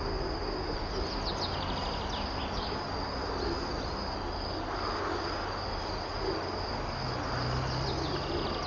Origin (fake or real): real